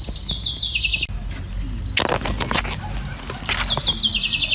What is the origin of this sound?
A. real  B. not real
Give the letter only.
A